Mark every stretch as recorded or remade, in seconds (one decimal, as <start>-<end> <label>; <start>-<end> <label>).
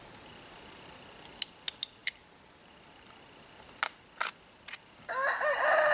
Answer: 0.0-2.0 recorded; 2.0-2.9 remade; 2.9-5.9 recorded